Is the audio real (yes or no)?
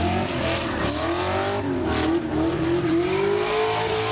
yes